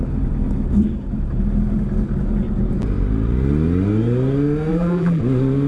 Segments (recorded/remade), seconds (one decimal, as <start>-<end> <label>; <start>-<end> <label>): 0.0-4.7 recorded; 4.7-5.2 remade; 5.2-5.7 recorded